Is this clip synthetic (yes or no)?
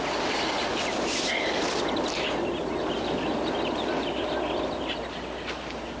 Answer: no